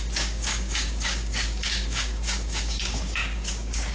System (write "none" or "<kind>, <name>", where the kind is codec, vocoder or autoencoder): codec, DAC